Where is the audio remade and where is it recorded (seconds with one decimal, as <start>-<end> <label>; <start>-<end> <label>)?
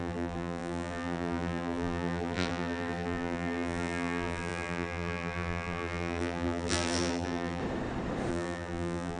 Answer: 0.0-7.6 remade; 7.6-8.3 recorded; 8.3-9.2 remade